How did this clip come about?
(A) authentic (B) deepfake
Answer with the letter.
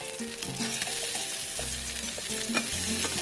A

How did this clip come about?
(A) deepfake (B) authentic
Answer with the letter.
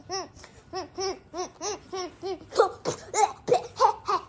B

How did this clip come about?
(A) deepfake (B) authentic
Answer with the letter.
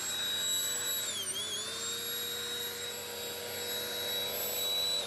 B